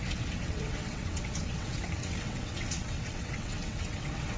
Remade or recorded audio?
remade